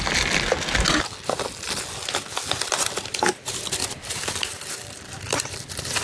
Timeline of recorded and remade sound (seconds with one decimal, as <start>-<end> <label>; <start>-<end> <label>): 0.0-3.8 recorded; 3.8-6.0 remade